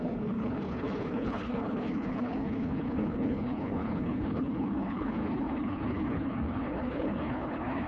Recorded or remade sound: remade